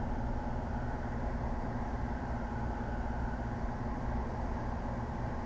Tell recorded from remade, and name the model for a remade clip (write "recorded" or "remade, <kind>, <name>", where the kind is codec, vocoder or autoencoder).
remade, vocoder, BigVGAN v2